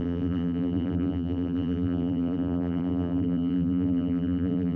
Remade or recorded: remade